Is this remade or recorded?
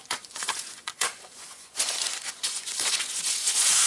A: remade